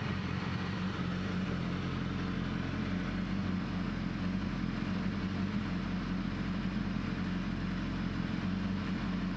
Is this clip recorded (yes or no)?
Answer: yes